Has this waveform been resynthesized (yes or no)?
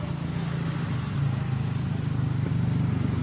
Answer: no